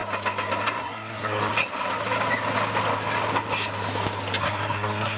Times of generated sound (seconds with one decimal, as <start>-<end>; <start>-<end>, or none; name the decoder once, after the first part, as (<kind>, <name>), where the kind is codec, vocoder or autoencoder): 0.8-1.5 (codec, SNAC); 4.4-5.2